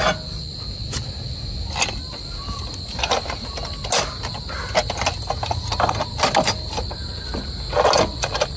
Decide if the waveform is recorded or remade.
recorded